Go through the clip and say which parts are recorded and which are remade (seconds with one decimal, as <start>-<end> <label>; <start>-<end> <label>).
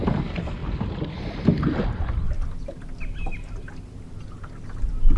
0.0-5.2 recorded